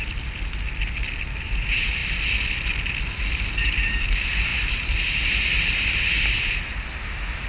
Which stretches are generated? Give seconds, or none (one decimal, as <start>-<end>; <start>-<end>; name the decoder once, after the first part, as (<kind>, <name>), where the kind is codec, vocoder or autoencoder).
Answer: 4.5-6.6 (vocoder, BigVGAN v2)